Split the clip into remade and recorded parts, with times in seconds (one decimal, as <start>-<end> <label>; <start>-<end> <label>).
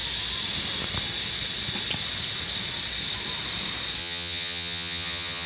0.0-4.0 recorded; 4.0-5.5 remade